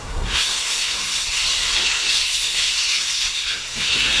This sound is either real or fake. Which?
fake